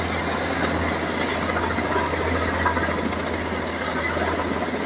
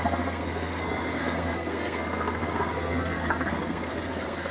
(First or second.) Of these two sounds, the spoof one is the second